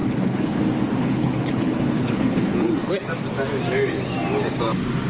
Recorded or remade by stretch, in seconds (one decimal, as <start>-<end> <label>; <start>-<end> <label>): 0.0-0.6 remade; 0.6-1.0 recorded; 1.0-2.7 remade; 2.7-5.1 recorded